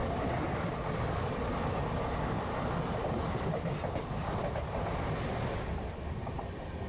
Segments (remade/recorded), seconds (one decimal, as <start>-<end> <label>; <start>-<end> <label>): 0.0-6.9 recorded